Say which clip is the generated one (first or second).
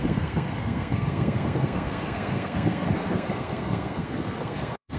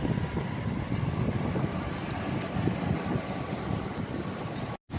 first